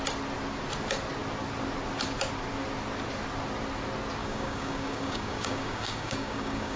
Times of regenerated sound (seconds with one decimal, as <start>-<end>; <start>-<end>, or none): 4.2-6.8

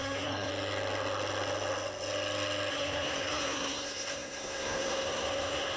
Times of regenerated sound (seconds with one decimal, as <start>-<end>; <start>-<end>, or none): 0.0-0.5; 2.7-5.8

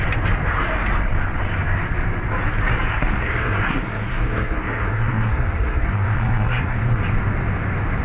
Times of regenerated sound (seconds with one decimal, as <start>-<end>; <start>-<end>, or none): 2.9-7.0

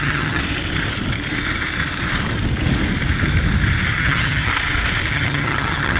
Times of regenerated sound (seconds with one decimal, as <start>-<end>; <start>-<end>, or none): 0.0-0.4; 4.0-4.5; 5.1-6.0